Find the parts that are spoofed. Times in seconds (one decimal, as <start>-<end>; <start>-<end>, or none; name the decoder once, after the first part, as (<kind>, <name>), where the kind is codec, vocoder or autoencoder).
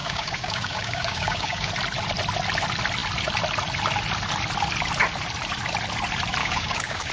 0.0-1.7 (codec, DAC); 6.4-7.1